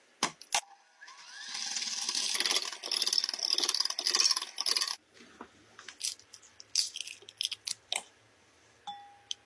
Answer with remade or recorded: recorded